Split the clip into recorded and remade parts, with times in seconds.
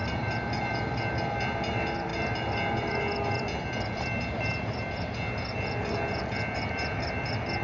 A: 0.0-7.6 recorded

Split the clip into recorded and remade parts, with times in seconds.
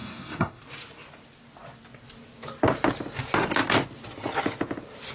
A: 0.0-0.6 remade; 0.6-5.1 recorded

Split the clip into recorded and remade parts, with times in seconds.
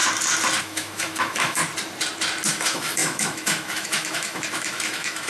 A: 0.0-0.6 recorded; 0.6-1.6 remade; 1.6-2.5 recorded; 2.5-5.3 remade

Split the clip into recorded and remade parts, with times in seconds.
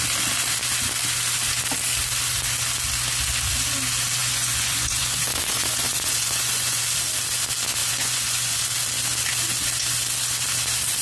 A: 0.0-4.2 recorded; 4.2-6.8 remade; 6.8-7.8 recorded; 7.8-8.6 remade; 8.6-11.0 recorded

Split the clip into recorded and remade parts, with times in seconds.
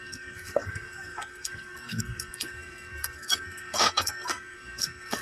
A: 0.0-5.2 remade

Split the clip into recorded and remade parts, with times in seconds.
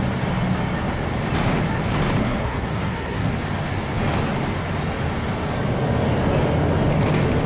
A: 0.0-2.2 recorded; 2.2-3.3 remade; 3.3-7.5 recorded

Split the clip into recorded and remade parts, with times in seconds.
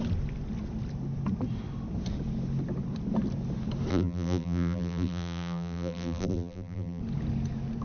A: 0.0-3.9 recorded; 3.9-7.0 remade; 7.0-7.8 recorded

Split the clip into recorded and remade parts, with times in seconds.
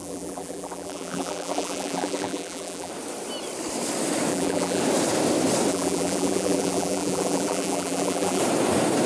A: 0.0-2.9 remade; 2.9-4.3 recorded; 4.3-4.8 remade; 4.8-5.7 recorded; 5.7-8.4 remade; 8.4-9.1 recorded